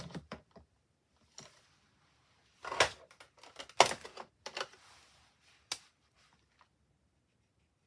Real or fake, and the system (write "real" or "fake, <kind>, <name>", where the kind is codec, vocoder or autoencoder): real